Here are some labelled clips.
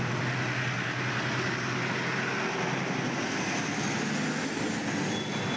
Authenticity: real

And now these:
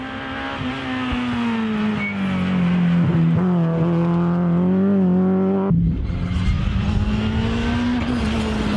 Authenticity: real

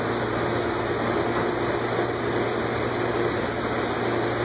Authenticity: real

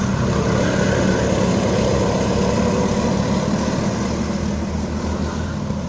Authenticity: real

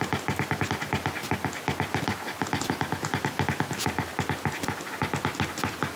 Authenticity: real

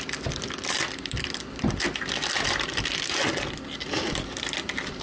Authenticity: fake